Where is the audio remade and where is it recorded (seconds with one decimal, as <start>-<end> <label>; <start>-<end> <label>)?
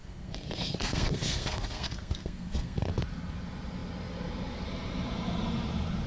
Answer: 0.0-2.9 remade; 2.9-6.1 recorded